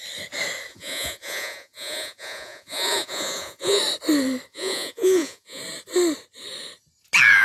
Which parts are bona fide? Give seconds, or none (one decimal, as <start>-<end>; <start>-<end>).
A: 0.0-0.7; 3.8-4.5; 5.6-7.4